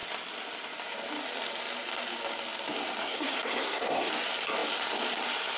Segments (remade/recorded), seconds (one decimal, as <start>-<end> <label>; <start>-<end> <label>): 0.0-3.0 recorded; 3.0-4.1 remade; 4.1-5.6 recorded